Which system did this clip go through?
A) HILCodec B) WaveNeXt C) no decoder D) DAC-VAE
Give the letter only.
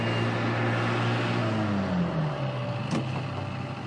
C